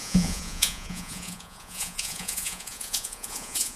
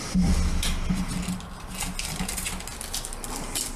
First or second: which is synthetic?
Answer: first